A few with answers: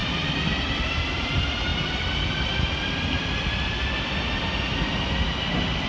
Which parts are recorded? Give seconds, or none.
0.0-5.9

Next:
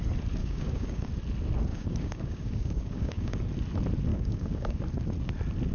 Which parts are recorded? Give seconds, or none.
0.0-0.4; 1.1-1.7; 3.4-4.1; 4.8-5.7

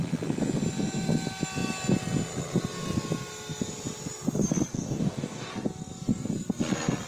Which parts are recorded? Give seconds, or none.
0.0-4.7; 5.5-7.1

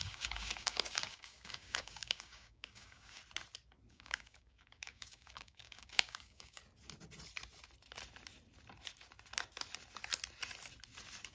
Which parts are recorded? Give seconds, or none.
3.2-3.9; 6.6-11.3

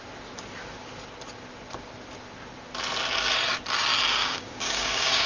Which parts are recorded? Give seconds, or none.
0.0-4.2

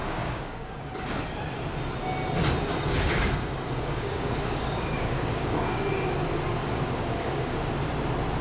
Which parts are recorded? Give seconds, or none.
0.7-2.7; 5.8-6.6; 7.7-8.4

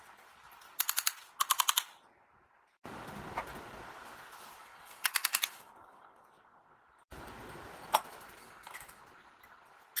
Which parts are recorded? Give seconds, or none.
0.0-4.6; 6.3-8.4; 9.0-10.0

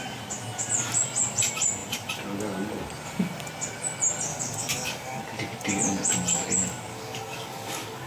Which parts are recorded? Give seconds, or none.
0.0-4.3; 5.2-6.9